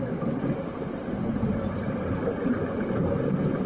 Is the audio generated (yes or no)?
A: no